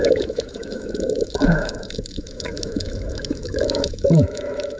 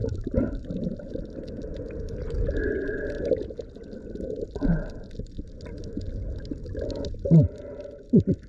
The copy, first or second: first